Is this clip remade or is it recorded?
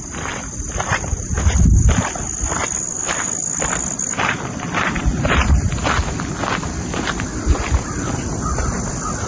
recorded